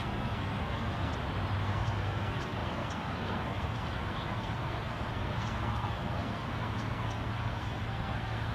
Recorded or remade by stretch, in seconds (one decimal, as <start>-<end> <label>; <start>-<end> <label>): 0.0-1.1 remade; 1.1-1.6 recorded; 1.6-8.5 remade